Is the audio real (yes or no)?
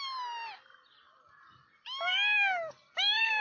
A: yes